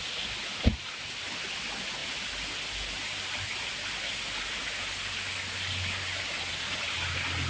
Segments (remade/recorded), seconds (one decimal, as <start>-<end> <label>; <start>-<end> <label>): 0.0-7.5 recorded